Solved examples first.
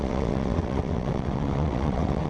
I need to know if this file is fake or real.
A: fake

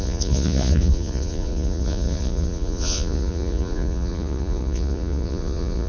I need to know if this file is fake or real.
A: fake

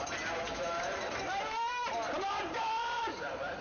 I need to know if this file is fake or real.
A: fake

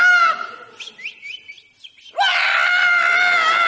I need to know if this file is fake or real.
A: real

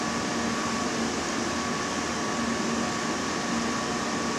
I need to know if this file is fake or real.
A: real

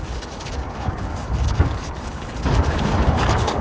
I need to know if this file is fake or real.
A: fake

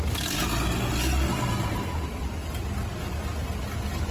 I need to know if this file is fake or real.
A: real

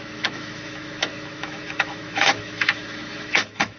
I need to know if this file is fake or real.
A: fake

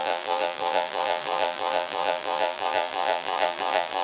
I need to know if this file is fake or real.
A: fake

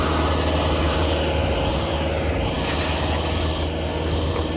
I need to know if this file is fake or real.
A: real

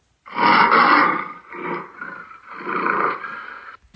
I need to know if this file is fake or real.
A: real